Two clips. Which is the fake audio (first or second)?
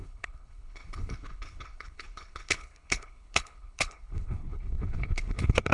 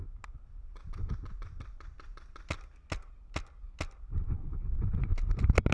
first